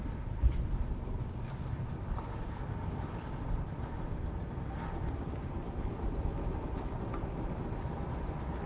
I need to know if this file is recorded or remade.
recorded